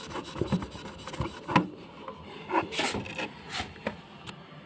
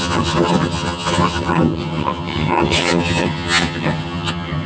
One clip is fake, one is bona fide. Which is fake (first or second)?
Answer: second